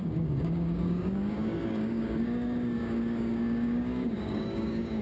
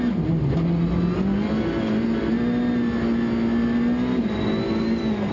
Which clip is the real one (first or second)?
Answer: second